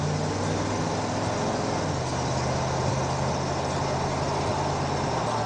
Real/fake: real